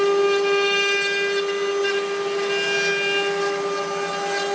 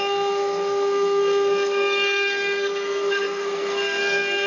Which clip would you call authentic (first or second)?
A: first